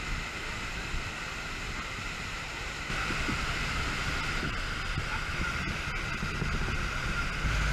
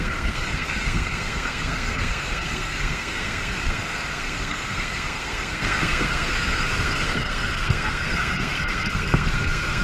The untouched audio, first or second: first